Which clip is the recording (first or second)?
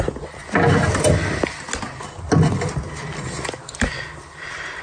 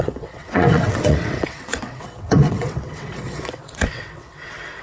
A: first